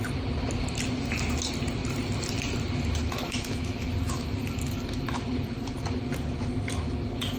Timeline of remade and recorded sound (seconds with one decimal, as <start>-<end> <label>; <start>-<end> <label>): 0.0-3.2 recorded; 3.2-3.9 remade; 3.9-7.4 recorded